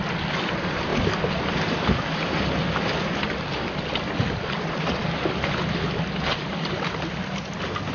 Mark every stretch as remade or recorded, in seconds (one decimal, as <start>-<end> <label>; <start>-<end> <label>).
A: 0.0-7.9 recorded